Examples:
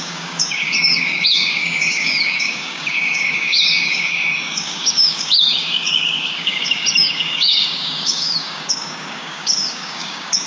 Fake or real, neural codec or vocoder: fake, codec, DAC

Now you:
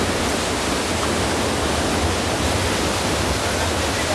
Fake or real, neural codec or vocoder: real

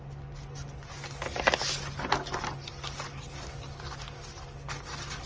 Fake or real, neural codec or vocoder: real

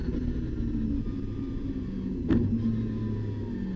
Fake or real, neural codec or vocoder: real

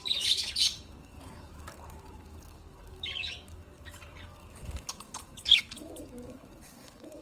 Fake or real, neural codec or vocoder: fake, codec, DAC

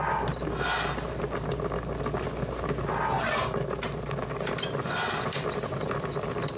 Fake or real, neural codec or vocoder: real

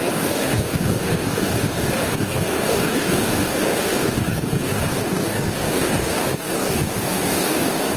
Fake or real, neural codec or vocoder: fake, codec, DAC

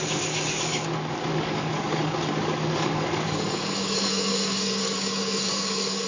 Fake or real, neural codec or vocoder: fake, codec, DAC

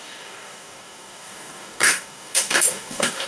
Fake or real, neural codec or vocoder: fake, codec, DAC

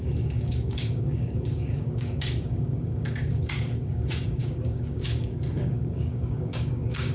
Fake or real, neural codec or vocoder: fake, codec, DAC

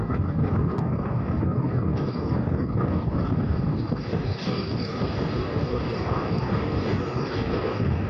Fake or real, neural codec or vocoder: fake, codec, DAC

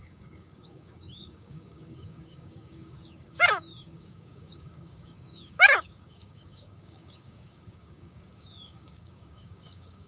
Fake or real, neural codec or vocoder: fake, codec, DAC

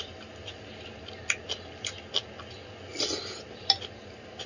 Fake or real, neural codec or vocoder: real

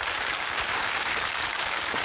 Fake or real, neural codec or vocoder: fake, codec, DAC